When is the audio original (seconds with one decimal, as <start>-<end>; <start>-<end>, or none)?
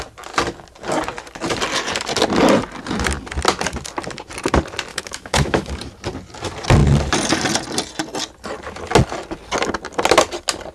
0.0-4.9; 5.7-10.7